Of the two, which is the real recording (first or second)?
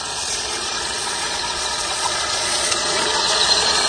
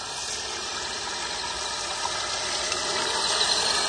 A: second